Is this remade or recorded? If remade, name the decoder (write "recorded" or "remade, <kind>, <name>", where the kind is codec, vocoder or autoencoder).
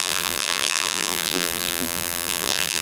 remade, vocoder, BigVGAN v2